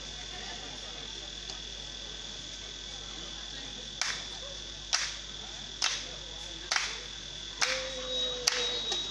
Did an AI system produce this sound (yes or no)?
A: no